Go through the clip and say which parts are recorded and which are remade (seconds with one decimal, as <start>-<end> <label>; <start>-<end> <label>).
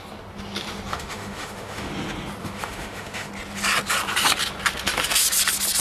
0.0-0.9 recorded; 0.9-1.9 remade; 1.9-2.4 recorded; 2.4-3.3 remade; 3.3-5.8 recorded